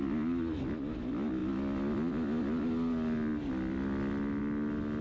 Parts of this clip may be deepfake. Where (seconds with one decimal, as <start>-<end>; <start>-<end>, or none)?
none